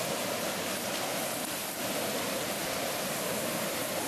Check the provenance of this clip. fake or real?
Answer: real